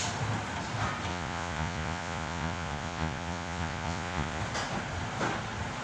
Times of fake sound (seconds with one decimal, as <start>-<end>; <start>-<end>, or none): 1.1-4.4